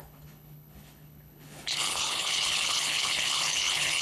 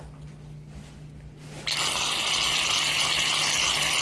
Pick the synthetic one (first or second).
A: first